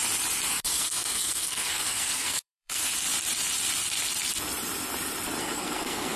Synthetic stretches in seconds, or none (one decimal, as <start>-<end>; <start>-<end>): 0.5-2.9; 5.4-6.2